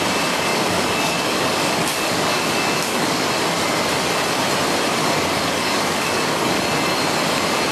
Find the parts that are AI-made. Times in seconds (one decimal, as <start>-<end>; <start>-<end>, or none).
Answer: 0.5-3.3; 5.0-6.6

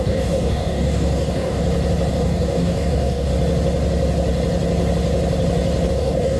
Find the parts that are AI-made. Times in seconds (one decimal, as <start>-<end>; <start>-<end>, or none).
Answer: 0.0-1.6; 2.1-3.3; 5.9-6.4

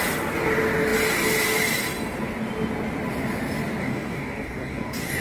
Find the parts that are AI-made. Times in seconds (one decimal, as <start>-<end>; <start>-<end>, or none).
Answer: 3.8-5.2

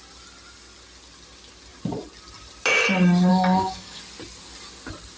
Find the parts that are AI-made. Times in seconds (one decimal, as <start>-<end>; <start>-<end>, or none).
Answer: 3.3-4.0

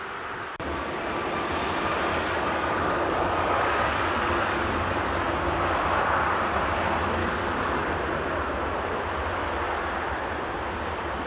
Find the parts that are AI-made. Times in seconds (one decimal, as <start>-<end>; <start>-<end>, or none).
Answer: 2.1-5.3; 7.2-7.8

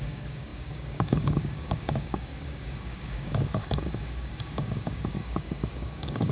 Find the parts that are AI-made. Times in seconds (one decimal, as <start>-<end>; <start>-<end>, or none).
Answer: 0.0-6.3